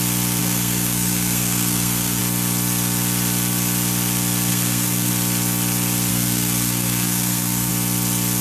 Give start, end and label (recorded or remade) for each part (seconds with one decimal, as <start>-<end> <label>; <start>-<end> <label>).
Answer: 0.0-0.4 recorded; 0.4-2.2 remade; 2.2-4.5 recorded; 4.5-5.1 remade; 5.1-6.1 recorded; 6.1-7.7 remade; 7.7-8.4 recorded